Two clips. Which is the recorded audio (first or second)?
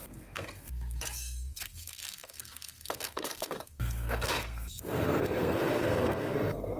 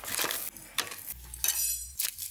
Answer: second